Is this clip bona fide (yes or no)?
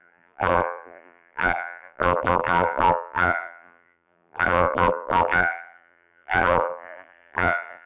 no